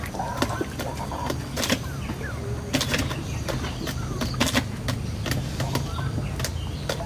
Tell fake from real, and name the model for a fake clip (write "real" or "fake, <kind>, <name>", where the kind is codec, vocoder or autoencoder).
real